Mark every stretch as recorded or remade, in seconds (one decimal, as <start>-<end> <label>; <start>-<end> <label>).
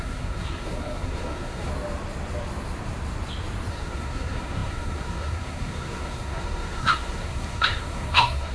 0.0-1.7 remade; 1.7-3.7 recorded; 3.7-8.5 remade